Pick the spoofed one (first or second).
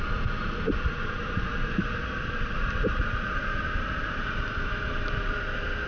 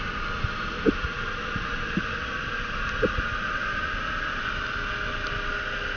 first